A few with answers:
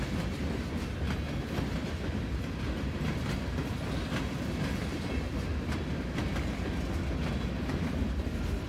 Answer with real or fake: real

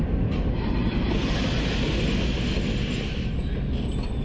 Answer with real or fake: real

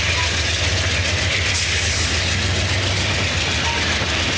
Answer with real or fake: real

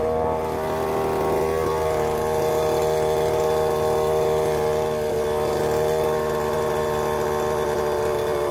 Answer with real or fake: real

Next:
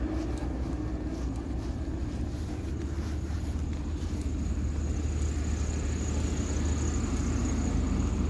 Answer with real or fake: real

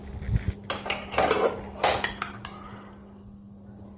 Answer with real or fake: real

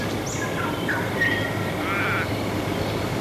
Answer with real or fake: real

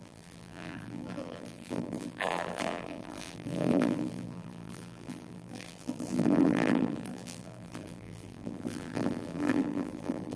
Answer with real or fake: fake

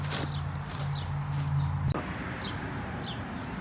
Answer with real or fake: real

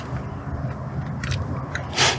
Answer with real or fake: real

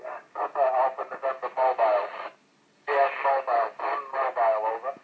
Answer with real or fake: real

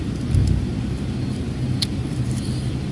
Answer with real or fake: fake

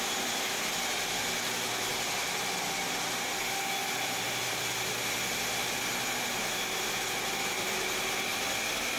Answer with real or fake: real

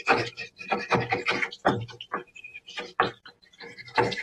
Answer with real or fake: fake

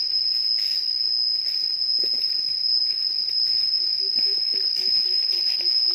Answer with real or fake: real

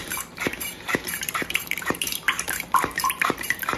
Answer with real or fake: fake